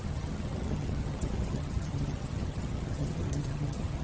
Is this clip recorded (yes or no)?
no